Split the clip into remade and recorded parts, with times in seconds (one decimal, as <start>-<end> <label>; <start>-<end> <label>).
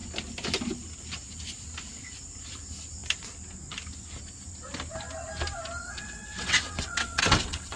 0.0-5.8 recorded; 5.8-7.8 remade